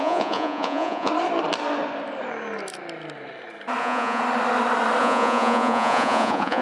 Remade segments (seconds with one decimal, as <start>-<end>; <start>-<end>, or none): 0.0-1.1; 3.8-4.2; 5.0-6.6